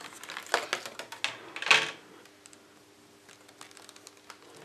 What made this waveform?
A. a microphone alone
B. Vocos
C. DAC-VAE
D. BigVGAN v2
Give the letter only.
A